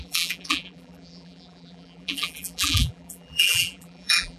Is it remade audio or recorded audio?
remade